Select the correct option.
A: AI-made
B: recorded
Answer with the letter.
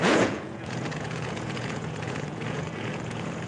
A